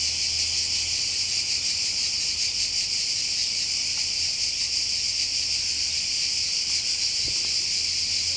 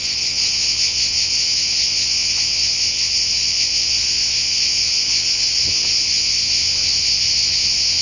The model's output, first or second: second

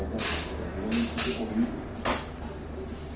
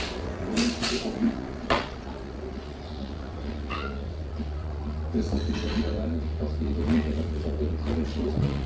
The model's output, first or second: second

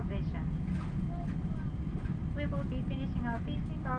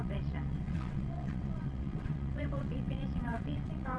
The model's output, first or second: second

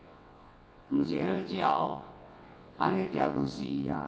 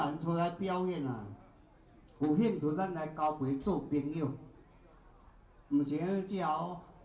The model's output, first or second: first